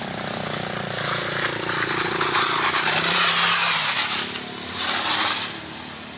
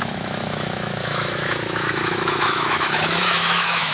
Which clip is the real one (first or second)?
first